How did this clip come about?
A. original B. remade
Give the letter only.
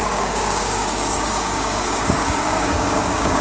B